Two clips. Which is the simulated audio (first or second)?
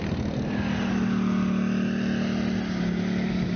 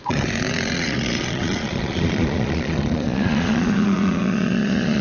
second